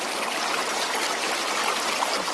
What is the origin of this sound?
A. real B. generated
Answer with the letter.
A